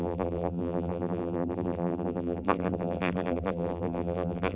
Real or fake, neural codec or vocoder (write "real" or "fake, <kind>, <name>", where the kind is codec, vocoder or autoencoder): fake, vocoder, BigVGAN v2